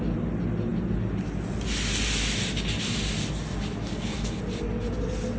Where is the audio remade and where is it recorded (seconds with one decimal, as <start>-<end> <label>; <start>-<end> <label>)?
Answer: 0.0-3.9 recorded; 3.9-4.4 remade; 4.4-5.4 recorded